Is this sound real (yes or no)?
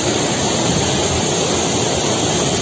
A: yes